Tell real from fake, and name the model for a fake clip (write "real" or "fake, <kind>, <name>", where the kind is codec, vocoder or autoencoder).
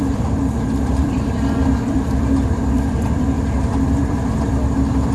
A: fake, vocoder, BigVGAN v2